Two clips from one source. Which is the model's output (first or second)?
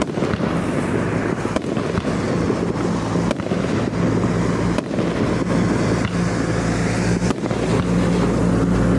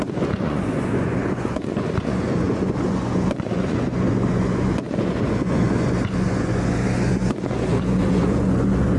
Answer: second